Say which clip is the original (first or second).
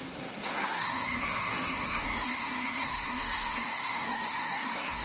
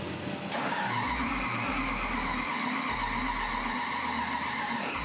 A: second